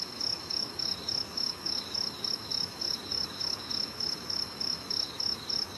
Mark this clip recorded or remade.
remade